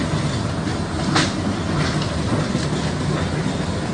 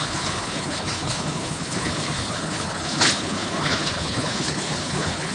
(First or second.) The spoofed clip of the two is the second